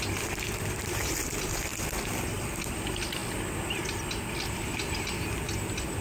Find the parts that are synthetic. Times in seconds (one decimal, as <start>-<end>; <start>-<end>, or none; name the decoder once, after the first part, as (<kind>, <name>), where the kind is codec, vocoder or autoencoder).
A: none